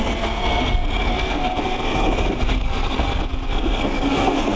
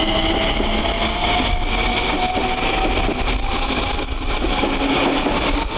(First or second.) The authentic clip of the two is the second